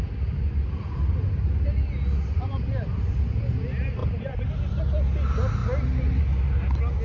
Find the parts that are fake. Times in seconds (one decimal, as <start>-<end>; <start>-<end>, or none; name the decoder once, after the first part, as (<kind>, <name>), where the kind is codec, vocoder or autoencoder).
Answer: none